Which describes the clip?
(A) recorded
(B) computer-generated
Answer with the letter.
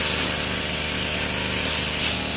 A